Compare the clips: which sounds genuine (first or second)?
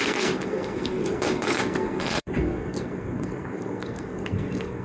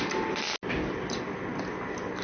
second